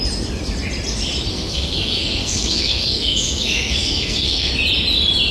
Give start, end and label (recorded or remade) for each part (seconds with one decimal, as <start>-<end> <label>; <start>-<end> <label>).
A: 0.0-1.3 recorded; 1.3-4.5 remade; 4.5-5.3 recorded